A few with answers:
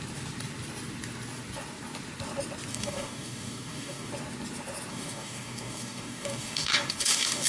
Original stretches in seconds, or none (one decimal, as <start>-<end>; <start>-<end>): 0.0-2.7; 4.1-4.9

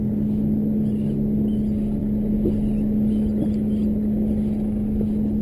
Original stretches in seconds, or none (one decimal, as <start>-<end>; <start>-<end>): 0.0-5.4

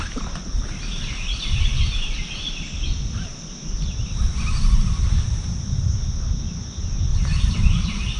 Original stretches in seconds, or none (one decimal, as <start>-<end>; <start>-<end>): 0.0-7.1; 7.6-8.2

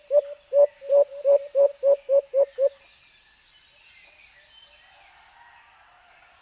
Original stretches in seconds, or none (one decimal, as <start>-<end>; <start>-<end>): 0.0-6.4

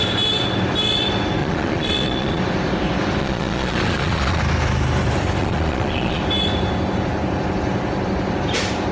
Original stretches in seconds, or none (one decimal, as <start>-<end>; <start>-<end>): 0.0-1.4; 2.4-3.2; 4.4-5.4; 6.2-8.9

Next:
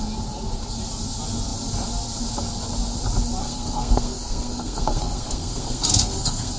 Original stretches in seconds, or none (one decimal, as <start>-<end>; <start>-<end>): 0.0-3.4